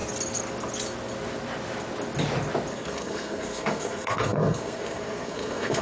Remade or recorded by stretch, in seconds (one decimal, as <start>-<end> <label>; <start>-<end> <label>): 0.0-2.7 recorded; 2.7-5.8 remade